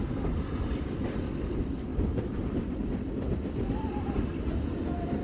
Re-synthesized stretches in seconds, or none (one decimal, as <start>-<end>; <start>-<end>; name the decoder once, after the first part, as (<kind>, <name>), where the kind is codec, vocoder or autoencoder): 1.9-2.9 (vocoder, BigVGAN v2)